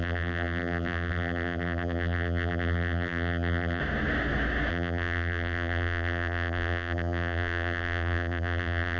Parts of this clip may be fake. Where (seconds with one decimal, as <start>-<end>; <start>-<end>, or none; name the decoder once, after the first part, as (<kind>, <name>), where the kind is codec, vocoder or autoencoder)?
0.0-3.8 (vocoder, BigVGAN v2); 4.7-9.0